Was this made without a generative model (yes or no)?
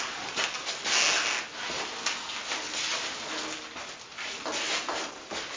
yes